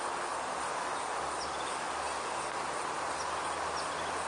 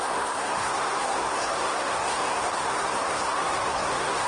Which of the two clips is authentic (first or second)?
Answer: first